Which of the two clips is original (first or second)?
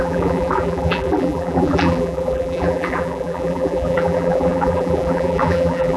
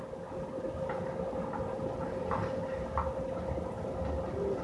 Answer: second